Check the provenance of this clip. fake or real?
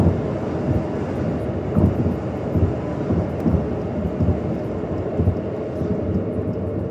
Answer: real